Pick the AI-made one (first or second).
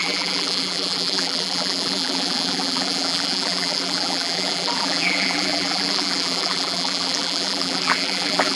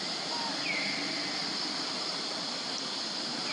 first